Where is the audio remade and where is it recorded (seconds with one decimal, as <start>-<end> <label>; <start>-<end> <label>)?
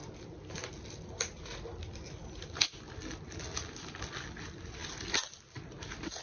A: 0.0-6.2 recorded